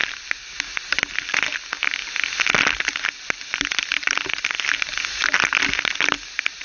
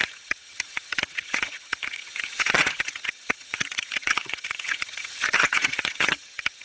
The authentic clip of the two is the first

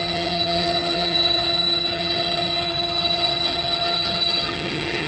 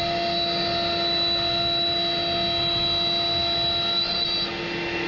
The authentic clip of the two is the second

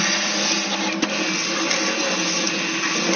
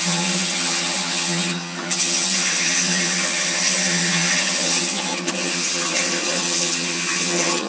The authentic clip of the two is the first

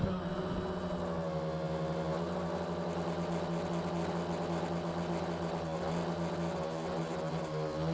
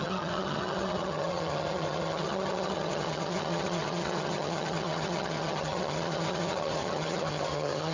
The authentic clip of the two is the first